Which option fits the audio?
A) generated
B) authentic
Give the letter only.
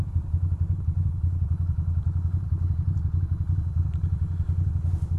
B